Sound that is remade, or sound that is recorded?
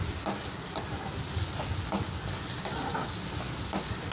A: recorded